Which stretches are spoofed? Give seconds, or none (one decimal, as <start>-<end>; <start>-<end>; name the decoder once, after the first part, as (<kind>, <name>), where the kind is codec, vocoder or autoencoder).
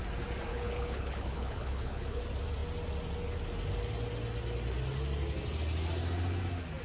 0.5-2.2 (codec, HILCodec)